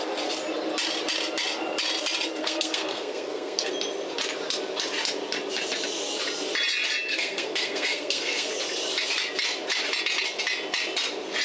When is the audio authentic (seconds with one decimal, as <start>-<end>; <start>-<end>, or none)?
0.0-2.4; 3.7-7.1; 8.5-11.4